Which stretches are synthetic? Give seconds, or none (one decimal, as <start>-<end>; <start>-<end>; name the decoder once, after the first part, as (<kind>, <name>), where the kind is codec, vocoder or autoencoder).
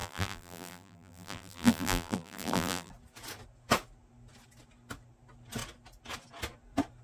0.0-2.9 (vocoder, BigVGAN v2)